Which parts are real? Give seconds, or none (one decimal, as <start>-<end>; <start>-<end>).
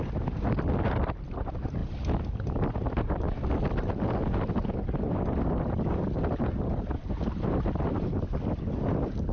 0.0-9.3